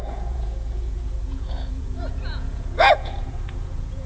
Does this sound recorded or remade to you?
remade